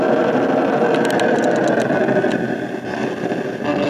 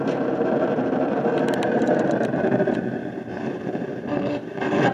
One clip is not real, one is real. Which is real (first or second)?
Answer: first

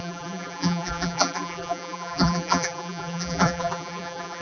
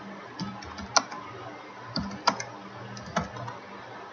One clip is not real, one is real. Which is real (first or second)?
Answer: second